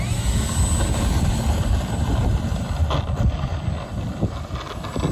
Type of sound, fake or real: real